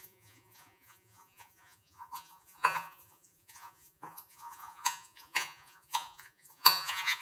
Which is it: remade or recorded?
remade